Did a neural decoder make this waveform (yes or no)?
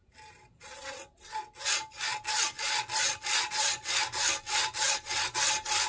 no